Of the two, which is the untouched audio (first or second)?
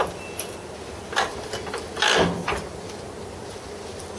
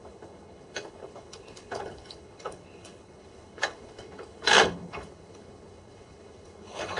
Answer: first